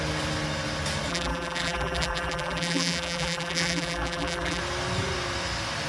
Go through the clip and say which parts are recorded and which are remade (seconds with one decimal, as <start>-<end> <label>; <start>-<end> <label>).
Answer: 0.0-1.1 recorded; 1.1-4.6 remade; 4.6-5.9 recorded